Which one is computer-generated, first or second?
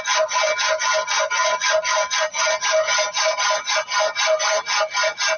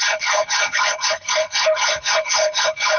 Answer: second